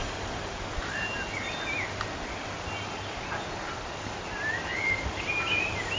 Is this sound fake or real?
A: real